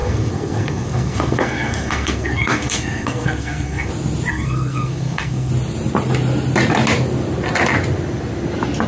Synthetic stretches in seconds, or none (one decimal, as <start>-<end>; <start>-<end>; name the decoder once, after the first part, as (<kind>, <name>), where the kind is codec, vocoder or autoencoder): 0.0-3.9 (codec, SNAC); 4.3-5.5